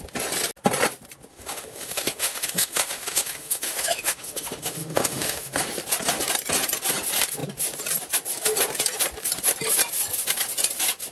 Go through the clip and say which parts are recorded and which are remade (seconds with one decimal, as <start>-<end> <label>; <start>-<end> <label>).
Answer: 0.0-1.3 recorded; 1.3-5.6 remade; 5.6-11.1 recorded